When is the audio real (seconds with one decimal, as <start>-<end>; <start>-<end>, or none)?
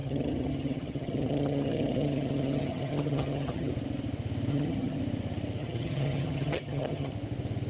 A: 3.7-4.5; 5.0-5.6; 7.1-7.7